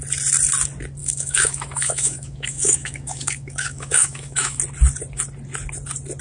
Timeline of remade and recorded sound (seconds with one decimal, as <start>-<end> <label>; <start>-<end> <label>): 0.0-1.0 recorded; 1.0-4.6 remade; 4.6-6.2 recorded